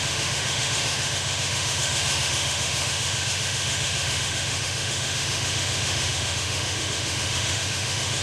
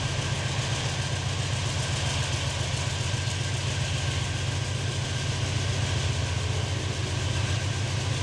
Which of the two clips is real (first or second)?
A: second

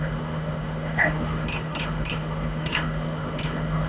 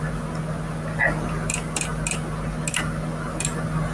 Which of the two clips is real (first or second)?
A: second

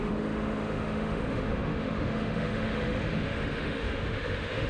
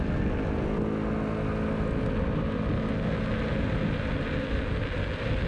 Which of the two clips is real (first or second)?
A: second